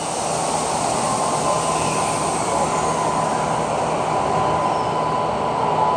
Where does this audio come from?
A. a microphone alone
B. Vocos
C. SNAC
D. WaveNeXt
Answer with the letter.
A